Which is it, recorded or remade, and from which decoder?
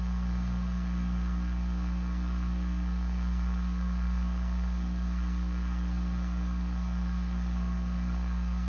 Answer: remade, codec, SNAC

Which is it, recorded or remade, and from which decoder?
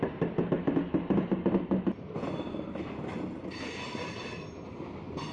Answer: recorded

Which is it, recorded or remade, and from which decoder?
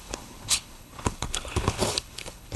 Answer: remade, codec, HILCodec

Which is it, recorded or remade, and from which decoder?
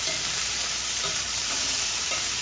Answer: remade, vocoder, BigVGAN v2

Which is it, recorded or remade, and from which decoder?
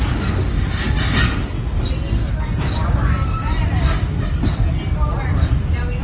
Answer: recorded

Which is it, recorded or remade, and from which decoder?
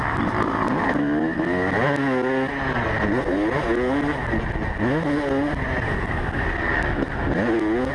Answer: recorded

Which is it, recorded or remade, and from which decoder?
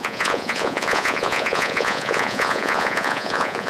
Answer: remade, vocoder, Vocos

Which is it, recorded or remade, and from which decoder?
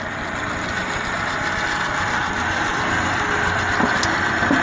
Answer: recorded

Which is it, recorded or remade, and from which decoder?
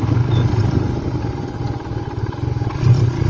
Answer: recorded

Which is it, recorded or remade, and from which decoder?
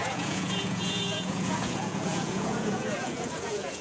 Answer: remade, vocoder, Vocos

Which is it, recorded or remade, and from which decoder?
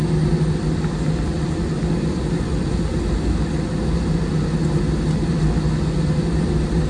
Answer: recorded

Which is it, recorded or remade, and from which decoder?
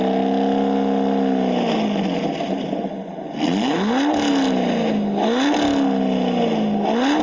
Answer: recorded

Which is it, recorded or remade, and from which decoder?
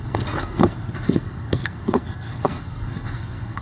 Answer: remade, codec, SNAC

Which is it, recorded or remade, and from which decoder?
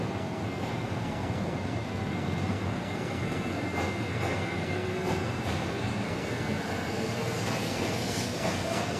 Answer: remade, codec, SNAC